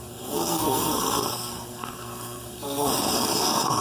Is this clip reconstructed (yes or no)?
yes